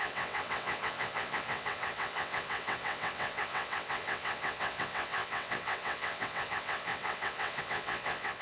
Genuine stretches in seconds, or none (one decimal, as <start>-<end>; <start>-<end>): none